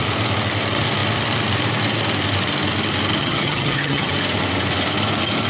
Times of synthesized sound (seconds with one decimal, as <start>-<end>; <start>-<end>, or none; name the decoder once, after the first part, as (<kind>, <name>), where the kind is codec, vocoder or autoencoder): 3.2-4.1 (vocoder, HiFi-GAN)